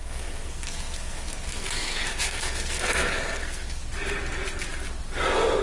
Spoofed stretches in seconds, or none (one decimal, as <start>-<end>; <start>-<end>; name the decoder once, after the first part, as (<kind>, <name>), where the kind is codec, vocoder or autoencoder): 0.0-3.8 (codec, SNAC)